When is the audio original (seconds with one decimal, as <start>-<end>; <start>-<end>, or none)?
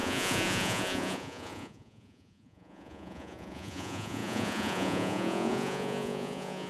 none